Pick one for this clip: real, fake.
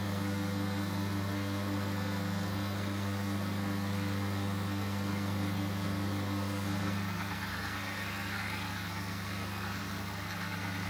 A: fake